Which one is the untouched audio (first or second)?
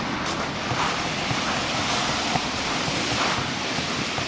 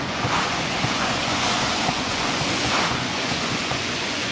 first